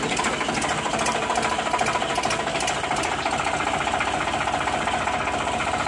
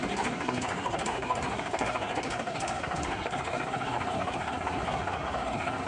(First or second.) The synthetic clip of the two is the second